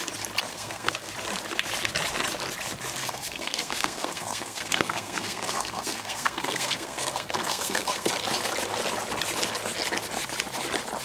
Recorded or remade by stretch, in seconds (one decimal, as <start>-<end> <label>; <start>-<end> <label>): 0.0-0.5 recorded; 0.5-1.1 remade; 1.1-3.0 recorded; 3.0-8.1 remade; 8.1-11.0 recorded